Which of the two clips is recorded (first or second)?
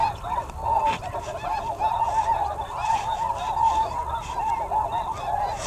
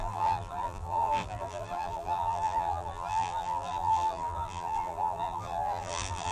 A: first